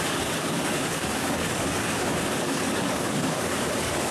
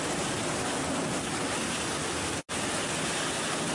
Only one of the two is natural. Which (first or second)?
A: second